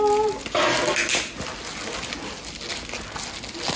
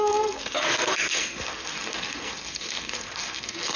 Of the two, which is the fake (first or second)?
second